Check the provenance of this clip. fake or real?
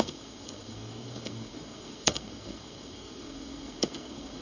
fake